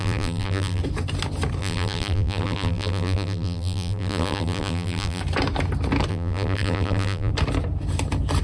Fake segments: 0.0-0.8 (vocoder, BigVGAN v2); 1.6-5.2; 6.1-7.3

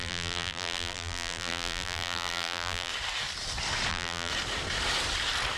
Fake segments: 0.0-2.9 (vocoder, BigVGAN v2); 3.9-4.3

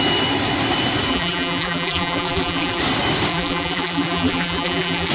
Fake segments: 1.1-2.8 (vocoder, BigVGAN v2); 3.3-5.1

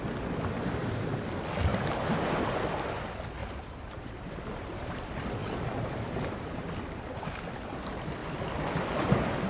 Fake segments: 1.7-2.6 (vocoder, BigVGAN v2); 3.4-5.0; 5.4-6.6

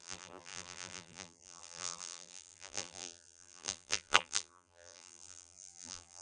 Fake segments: 0.0-6.2 (vocoder, BigVGAN v2)

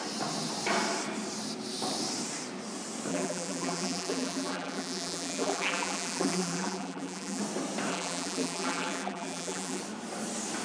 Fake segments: 3.1-7.4 (vocoder, BigVGAN v2); 7.9-9.8

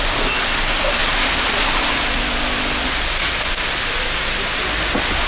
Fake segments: 1.0-4.0 (vocoder, BigVGAN v2)